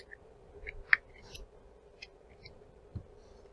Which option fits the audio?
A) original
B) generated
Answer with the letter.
A